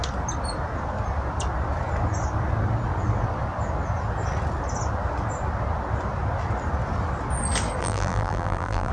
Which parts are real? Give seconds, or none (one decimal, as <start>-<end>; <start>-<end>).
0.0-7.8